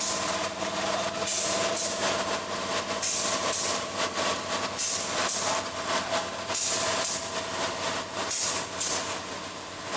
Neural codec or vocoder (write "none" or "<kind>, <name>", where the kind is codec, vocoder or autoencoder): none